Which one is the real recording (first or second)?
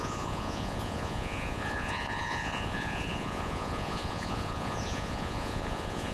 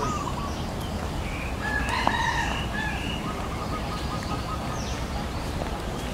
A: second